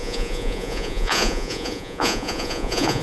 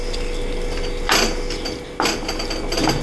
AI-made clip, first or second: first